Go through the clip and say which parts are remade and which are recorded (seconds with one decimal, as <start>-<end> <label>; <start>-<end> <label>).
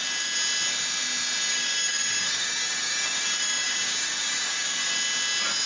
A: 0.0-1.5 recorded; 1.5-4.9 remade; 4.9-5.7 recorded